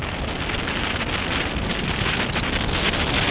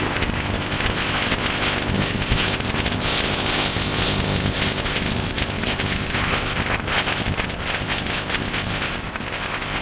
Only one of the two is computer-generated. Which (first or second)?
second